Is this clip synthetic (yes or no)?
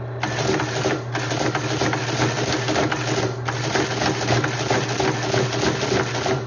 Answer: no